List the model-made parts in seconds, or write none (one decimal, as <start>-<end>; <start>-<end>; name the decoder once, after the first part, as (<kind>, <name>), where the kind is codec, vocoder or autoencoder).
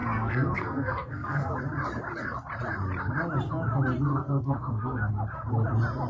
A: 0.0-1.5 (codec, SNAC); 4.1-5.1